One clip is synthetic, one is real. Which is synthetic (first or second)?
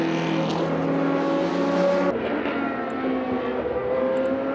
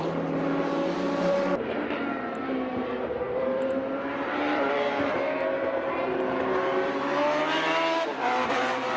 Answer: second